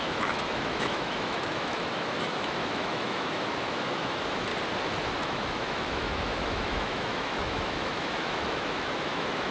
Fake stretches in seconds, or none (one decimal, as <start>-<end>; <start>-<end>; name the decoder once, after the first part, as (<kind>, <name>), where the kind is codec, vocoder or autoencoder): 0.0-4.5 (autoencoder, DAC-VAE); 5.2-9.5